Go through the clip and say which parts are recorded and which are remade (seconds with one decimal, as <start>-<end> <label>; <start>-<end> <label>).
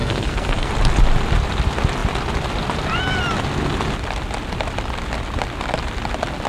0.0-0.7 remade; 0.7-6.5 recorded